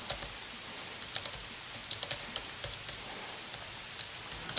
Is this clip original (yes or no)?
yes